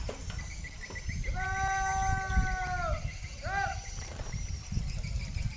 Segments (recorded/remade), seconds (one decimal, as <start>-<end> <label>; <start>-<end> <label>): 0.0-5.6 recorded